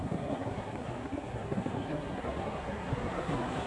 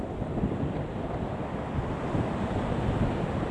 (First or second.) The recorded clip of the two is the second